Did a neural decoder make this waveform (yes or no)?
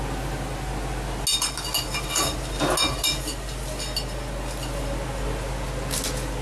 no